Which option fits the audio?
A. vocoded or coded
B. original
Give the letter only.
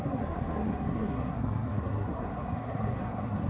A